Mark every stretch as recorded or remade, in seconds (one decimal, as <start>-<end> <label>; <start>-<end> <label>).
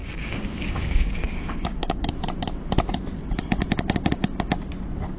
0.0-2.1 remade; 2.1-5.2 recorded